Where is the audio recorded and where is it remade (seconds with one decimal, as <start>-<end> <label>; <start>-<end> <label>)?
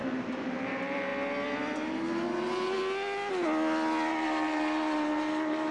0.0-1.1 remade; 1.1-4.1 recorded; 4.1-5.7 remade